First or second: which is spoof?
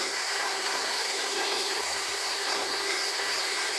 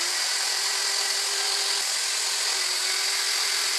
first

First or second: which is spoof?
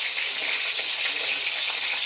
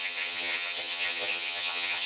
second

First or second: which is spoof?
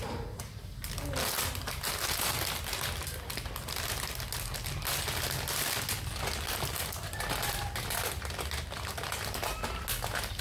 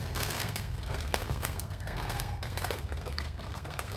second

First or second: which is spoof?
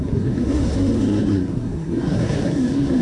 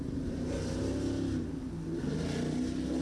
first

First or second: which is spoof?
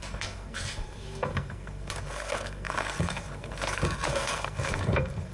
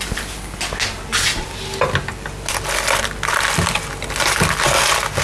first